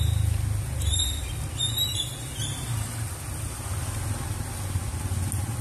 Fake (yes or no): no